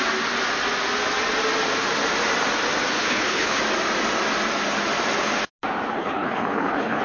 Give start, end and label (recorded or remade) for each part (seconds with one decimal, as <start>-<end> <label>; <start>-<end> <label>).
0.0-3.0 recorded; 3.0-3.6 remade; 3.6-5.9 recorded; 5.9-7.0 remade